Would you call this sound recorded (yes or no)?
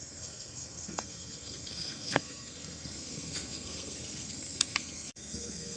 no